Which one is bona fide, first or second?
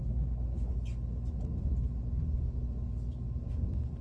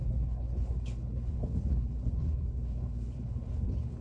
first